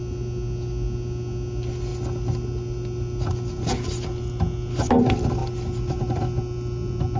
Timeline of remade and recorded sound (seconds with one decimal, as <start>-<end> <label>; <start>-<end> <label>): 0.0-7.2 recorded